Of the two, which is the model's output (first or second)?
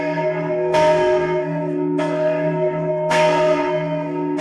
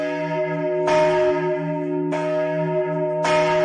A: first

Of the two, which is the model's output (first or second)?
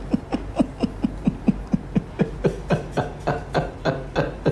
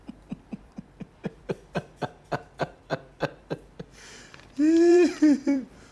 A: second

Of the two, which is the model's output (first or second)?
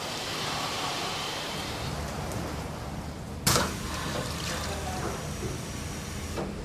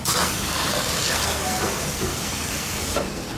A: second